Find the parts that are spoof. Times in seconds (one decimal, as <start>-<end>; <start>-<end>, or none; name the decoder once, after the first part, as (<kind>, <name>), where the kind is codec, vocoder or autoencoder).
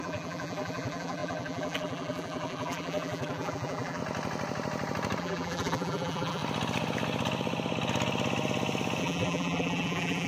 0.0-4.0 (vocoder, BigVGAN v2); 5.2-6.4; 9.0-10.3